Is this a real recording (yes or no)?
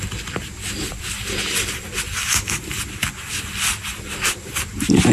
no